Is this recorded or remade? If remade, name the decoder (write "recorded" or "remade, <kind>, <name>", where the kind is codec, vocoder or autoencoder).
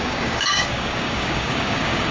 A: remade, codec, DAC